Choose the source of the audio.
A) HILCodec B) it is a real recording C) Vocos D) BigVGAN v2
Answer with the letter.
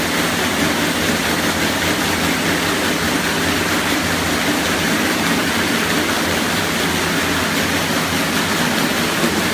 B